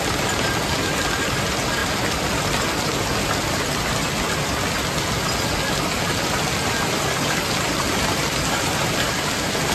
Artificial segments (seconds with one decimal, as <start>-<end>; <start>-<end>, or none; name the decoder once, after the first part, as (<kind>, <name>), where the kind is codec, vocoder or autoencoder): none